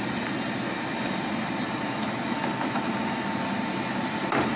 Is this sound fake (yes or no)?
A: no